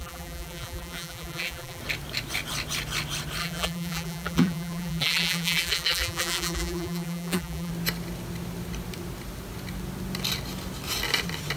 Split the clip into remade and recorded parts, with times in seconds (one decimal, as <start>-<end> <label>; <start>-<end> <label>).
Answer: 0.0-1.8 remade; 1.8-3.4 recorded; 3.4-7.7 remade; 7.7-11.6 recorded